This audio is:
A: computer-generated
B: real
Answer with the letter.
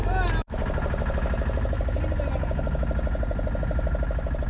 B